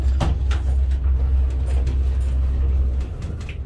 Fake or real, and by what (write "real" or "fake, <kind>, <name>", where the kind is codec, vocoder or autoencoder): real